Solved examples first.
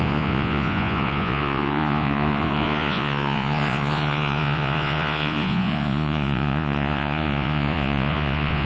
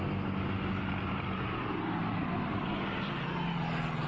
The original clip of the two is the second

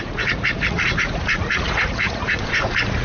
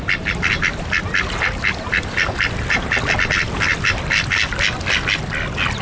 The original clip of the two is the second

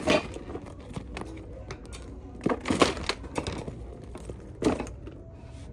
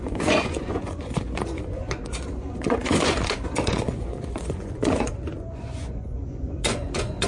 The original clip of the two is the first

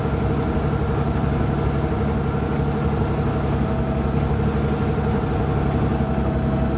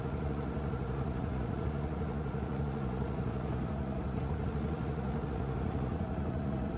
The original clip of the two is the first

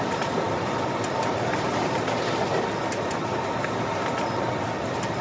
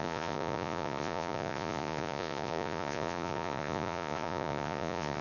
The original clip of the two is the first